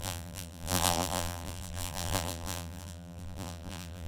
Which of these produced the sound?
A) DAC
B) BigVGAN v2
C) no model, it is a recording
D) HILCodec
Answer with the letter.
B